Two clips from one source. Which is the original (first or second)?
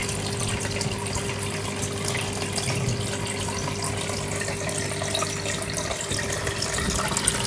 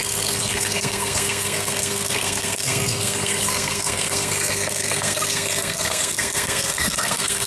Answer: first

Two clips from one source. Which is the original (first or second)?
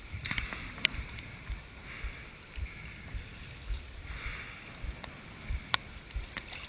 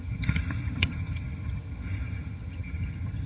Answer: first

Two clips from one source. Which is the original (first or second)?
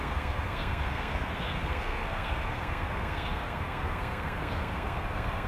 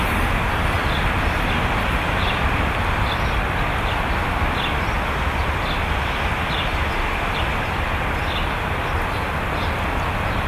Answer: second